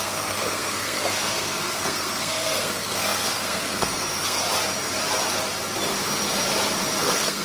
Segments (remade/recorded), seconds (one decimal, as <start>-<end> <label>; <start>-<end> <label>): 0.0-4.4 remade; 4.4-7.0 recorded; 7.0-7.4 remade